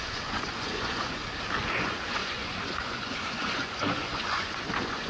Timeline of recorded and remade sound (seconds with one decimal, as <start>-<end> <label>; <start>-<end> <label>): 0.0-1.2 remade; 1.2-1.8 recorded; 1.8-5.1 remade